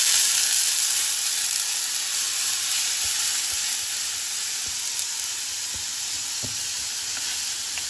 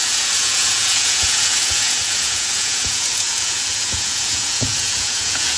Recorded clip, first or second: first